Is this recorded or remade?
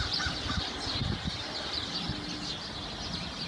recorded